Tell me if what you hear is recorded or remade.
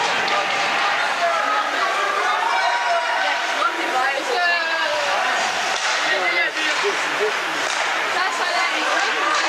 recorded